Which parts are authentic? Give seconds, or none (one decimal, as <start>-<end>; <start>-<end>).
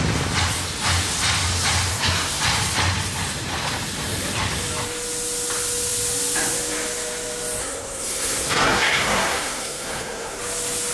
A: 0.0-1.9; 2.4-7.6; 10.4-10.9